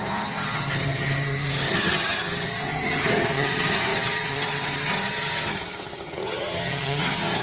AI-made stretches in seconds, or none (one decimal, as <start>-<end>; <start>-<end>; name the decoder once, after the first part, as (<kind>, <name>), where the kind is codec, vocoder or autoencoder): 0.0-7.4 (vocoder, HiFi-GAN)